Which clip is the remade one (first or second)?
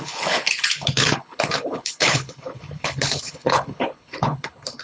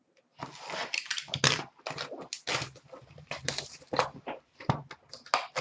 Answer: first